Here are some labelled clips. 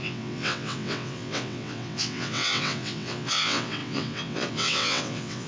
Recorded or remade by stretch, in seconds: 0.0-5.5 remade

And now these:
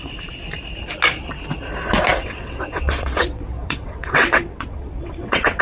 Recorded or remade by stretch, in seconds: 0.0-2.1 recorded; 2.1-5.6 remade

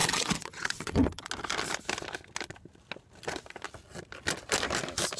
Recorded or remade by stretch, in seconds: 0.0-1.3 remade; 1.3-5.2 recorded

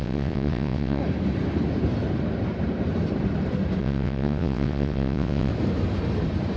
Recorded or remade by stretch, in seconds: 0.0-1.0 remade; 1.0-3.8 recorded; 3.8-5.5 remade; 5.5-6.6 recorded